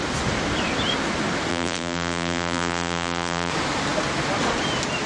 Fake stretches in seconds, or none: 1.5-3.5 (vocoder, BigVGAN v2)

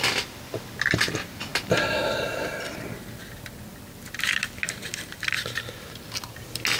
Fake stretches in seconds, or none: none

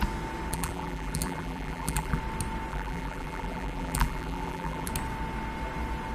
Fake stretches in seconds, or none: 0.5-2.2 (vocoder, BigVGAN v2); 2.7-4.9

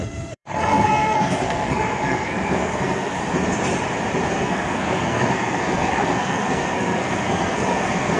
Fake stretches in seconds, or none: 0.0-3.2 (codec, SNAC); 4.3-8.2

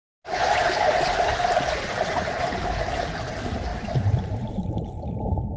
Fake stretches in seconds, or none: 3.7-4.8 (vocoder, BigVGAN v2)

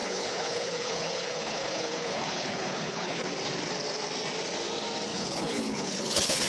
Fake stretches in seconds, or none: 0.0-3.3 (codec, HILCodec); 5.1-6.5